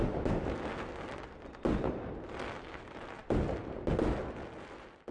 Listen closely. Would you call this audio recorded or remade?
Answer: recorded